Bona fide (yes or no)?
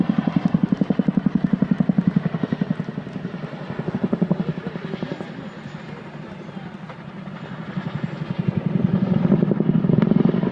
yes